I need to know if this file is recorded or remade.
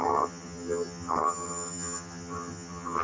remade